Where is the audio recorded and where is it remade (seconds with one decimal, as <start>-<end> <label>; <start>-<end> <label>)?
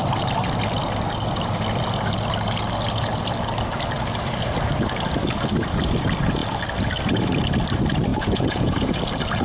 0.0-8.1 recorded; 8.1-9.0 remade; 9.0-9.4 recorded